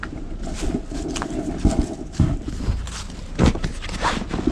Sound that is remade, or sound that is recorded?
recorded